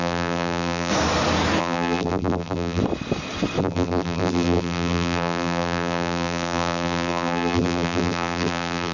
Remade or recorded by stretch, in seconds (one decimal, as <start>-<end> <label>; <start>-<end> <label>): 0.0-0.9 remade; 0.9-1.6 recorded; 1.6-2.8 remade; 2.8-3.6 recorded; 3.6-8.9 remade